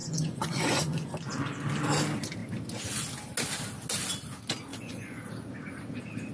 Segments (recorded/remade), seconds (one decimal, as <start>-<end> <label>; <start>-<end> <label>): 0.0-1.1 remade; 1.1-4.7 recorded; 4.7-5.3 remade; 5.3-6.3 recorded